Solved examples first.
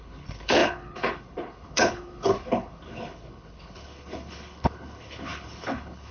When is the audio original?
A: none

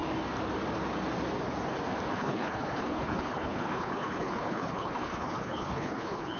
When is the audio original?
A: 0.0-2.1

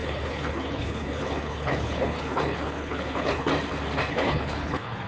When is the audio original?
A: 3.5-4.1

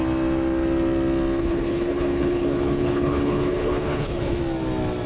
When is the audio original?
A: 0.0-1.4; 4.4-5.1

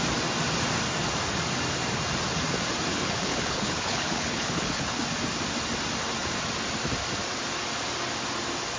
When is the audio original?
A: 0.0-2.9; 5.0-8.8

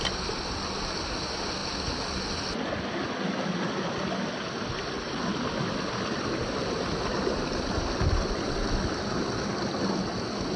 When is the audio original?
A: 0.0-10.6

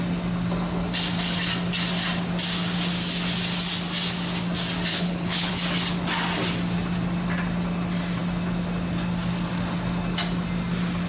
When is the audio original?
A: 0.0-4.9; 5.5-11.1

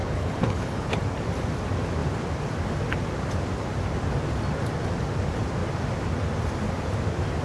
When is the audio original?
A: 1.0-7.4